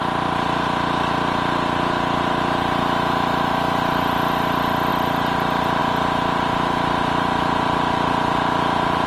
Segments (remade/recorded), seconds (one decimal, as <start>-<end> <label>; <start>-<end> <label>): 0.0-2.8 recorded; 2.8-3.8 remade; 3.8-9.1 recorded